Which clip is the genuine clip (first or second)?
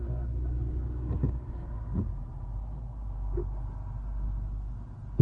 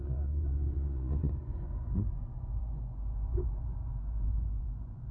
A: first